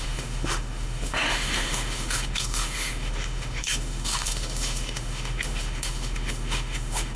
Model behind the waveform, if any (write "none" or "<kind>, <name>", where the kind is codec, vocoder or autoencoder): autoencoder, DAC-VAE